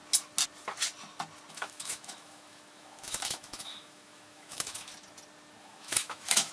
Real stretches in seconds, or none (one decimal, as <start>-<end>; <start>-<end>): 0.0-1.5; 4.9-5.6